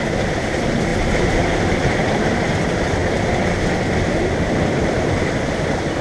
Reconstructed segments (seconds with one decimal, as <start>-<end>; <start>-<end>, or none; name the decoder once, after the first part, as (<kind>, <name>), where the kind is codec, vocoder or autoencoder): 0.0-0.9 (vocoder, BigVGAN v2); 1.8-3.0; 4.8-6.0